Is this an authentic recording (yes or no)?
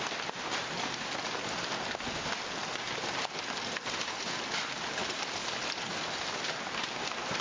yes